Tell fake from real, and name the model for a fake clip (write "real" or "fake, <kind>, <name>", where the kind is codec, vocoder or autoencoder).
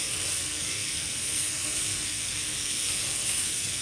fake, codec, SNAC